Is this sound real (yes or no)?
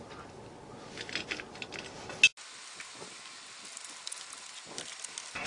yes